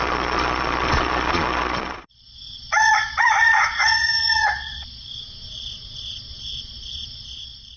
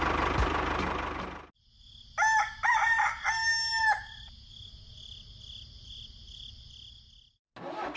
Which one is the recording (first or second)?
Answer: second